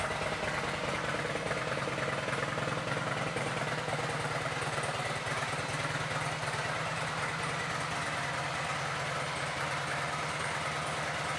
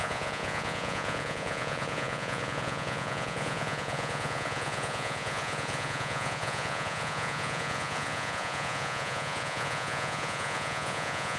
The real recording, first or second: first